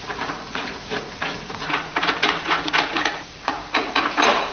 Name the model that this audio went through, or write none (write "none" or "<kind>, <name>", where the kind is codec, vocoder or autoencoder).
vocoder, Vocos